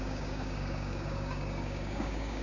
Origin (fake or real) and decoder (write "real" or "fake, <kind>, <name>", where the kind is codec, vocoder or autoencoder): fake, codec, DAC